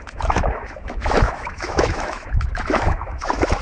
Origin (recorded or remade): remade